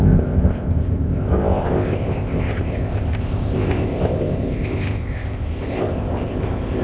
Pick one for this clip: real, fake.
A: fake